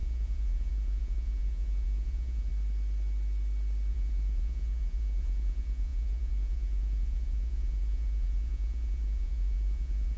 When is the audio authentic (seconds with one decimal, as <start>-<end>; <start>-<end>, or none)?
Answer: 2.5-3.9